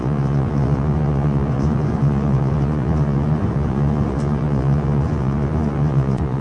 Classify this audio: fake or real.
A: fake